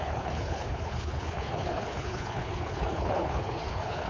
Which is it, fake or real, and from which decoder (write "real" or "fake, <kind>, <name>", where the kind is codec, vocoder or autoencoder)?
fake, codec, HILCodec